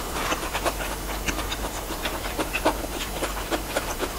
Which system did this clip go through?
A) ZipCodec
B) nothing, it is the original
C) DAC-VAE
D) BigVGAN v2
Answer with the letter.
D